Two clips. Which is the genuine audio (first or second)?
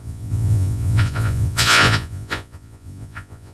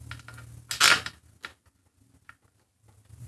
second